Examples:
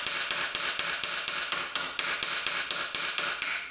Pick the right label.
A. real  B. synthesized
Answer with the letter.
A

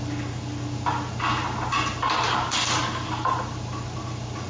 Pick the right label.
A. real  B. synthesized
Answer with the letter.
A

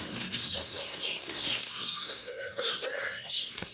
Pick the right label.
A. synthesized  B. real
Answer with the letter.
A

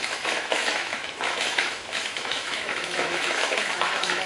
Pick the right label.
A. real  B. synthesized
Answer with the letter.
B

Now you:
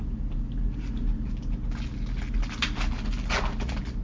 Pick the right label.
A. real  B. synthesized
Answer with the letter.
A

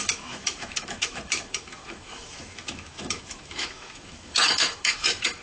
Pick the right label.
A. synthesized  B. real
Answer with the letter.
A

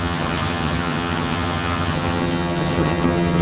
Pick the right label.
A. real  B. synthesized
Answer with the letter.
B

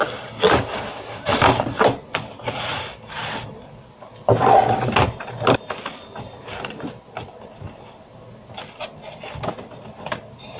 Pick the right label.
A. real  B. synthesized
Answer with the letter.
A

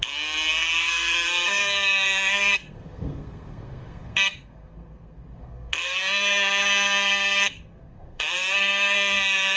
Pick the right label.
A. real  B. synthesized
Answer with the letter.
B